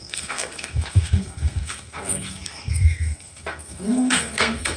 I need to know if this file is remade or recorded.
remade